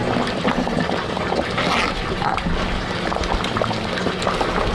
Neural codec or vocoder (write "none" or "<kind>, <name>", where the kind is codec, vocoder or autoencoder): none